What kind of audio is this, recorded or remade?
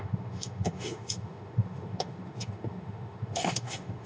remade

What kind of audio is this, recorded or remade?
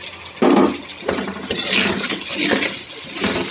recorded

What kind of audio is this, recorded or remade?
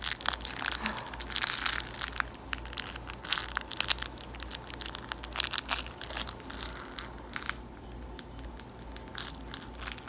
recorded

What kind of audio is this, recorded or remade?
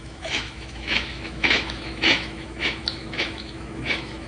remade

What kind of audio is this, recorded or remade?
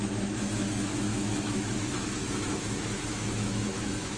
remade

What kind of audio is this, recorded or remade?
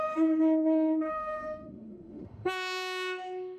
remade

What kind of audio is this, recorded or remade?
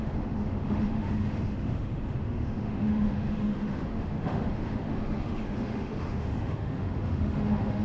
remade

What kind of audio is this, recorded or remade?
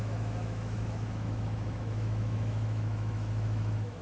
remade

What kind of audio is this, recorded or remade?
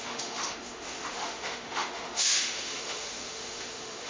remade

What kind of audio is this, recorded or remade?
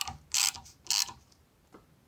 recorded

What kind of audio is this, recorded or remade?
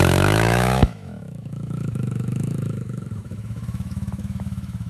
remade